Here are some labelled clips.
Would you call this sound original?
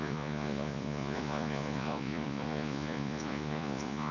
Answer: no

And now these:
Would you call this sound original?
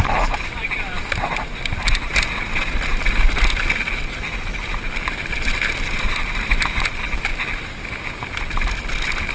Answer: yes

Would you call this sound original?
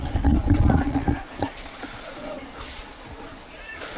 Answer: no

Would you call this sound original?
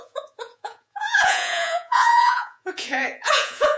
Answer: no